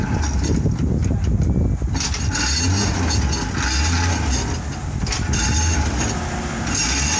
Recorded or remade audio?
recorded